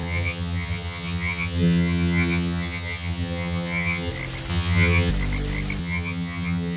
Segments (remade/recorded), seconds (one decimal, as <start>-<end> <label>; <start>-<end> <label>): 0.0-4.1 remade; 4.1-4.5 recorded; 4.5-5.1 remade; 5.1-5.8 recorded; 5.8-6.8 remade